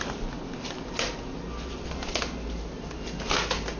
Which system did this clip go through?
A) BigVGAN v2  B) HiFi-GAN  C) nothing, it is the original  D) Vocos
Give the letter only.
C